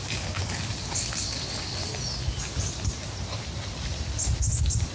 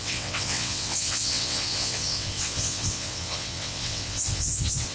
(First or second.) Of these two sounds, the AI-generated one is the second